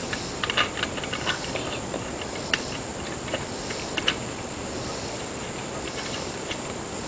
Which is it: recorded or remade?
remade